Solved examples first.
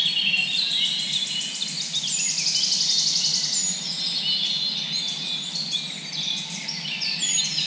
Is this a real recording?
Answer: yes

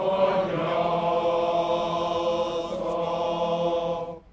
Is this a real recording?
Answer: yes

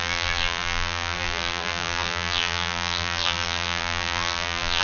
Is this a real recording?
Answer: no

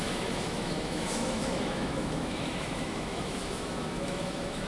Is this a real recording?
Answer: no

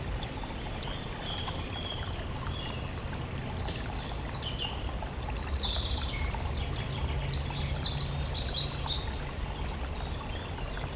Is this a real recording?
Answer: yes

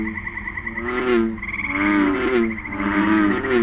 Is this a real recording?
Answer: yes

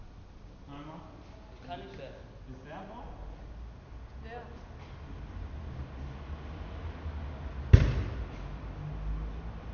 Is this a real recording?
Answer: yes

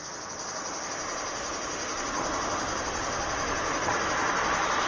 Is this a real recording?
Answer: yes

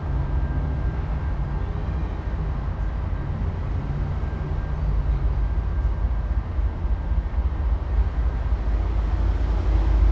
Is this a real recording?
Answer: yes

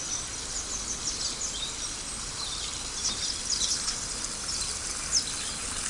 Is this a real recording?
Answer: yes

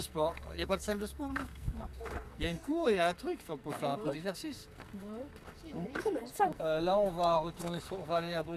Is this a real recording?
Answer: no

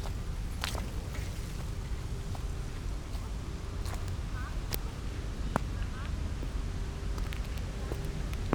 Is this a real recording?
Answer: yes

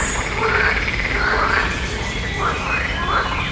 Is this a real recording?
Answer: yes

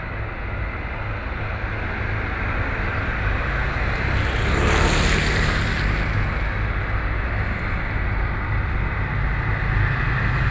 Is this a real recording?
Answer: yes